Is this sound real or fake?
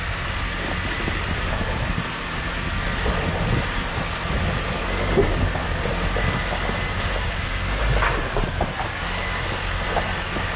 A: real